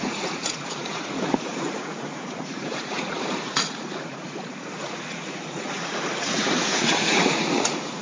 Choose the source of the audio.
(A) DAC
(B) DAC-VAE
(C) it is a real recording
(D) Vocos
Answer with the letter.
D